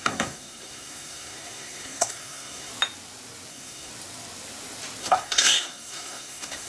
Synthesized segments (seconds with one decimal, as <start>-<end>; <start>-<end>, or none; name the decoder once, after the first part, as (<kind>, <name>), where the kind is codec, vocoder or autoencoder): 0.0-2.7 (codec, SNAC); 3.5-3.9; 5.0-6.7